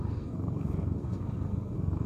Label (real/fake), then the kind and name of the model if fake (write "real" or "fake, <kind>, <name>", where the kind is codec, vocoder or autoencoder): fake, codec, SNAC